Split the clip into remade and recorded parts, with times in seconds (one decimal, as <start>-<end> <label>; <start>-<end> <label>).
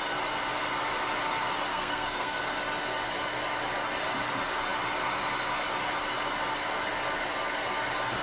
0.0-1.7 recorded; 1.7-2.4 remade; 2.4-8.2 recorded